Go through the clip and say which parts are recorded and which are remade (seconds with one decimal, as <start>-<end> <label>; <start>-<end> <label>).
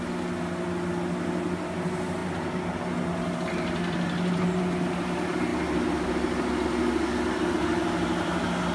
0.0-8.7 recorded